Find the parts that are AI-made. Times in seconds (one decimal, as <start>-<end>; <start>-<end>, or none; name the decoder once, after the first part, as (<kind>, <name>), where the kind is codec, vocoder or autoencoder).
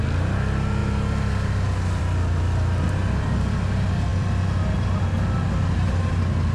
none